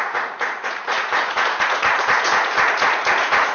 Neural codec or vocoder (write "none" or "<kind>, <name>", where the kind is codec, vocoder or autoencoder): vocoder, Vocos